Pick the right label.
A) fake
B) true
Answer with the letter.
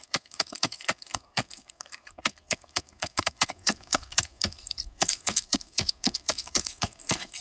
A